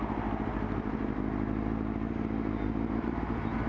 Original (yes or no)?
yes